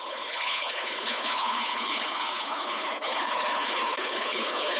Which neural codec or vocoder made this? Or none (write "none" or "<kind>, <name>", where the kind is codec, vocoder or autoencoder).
codec, HILCodec